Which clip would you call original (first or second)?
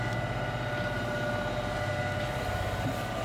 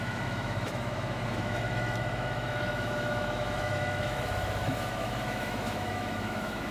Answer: first